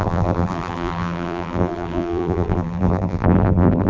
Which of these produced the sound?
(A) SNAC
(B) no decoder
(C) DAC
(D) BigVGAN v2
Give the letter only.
D